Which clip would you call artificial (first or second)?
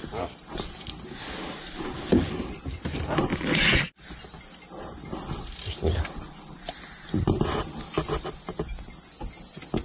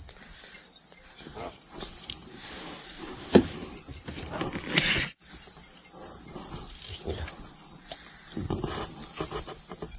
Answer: second